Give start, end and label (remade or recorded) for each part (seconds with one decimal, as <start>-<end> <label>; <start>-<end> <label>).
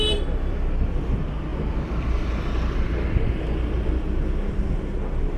0.0-5.4 recorded